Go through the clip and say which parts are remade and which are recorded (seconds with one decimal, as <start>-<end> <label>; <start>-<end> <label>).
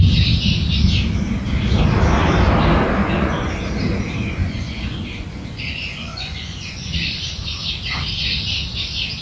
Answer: 0.0-3.0 recorded; 3.0-3.5 remade; 3.5-4.4 recorded; 4.4-7.6 remade; 7.6-9.2 recorded